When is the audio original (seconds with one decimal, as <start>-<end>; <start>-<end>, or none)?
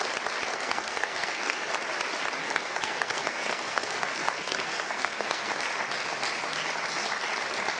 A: 0.0-0.5; 1.7-2.4; 5.5-7.8